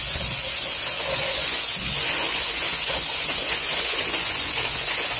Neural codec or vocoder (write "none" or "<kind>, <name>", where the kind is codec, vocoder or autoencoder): vocoder, Vocos